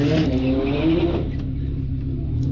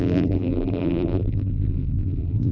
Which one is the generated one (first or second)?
second